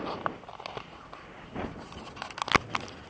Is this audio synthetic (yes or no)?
no